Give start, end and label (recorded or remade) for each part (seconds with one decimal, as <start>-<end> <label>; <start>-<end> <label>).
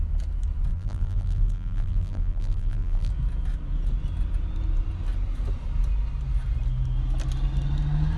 0.0-0.7 recorded; 0.7-3.1 remade; 3.1-8.2 recorded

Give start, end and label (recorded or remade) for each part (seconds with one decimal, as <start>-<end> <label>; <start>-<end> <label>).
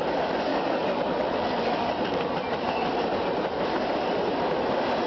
0.0-0.5 recorded; 0.5-3.0 remade; 3.0-5.1 recorded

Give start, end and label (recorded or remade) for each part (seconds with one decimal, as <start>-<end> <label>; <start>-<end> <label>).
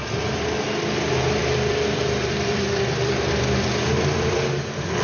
0.0-1.4 recorded; 1.4-4.4 remade; 4.4-5.0 recorded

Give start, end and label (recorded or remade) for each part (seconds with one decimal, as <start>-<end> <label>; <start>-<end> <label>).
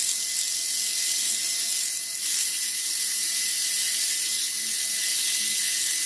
0.0-2.3 recorded; 2.3-4.3 remade; 4.3-6.1 recorded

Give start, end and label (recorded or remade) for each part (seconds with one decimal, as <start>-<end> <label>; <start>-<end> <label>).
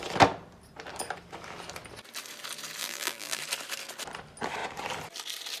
0.0-2.8 recorded; 2.8-3.4 remade; 3.4-5.6 recorded